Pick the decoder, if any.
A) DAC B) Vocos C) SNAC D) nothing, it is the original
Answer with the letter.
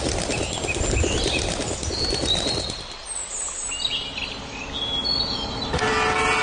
D